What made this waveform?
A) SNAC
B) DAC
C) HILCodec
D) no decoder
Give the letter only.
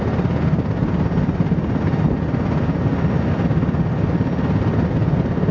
D